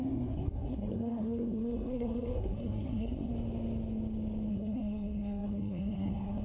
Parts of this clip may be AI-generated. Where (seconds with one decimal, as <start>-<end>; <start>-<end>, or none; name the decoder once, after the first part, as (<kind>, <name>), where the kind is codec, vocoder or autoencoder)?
0.0-3.3 (codec, SNAC); 4.5-6.4